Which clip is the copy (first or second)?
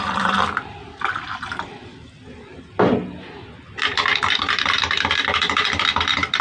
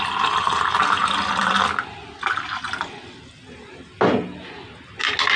first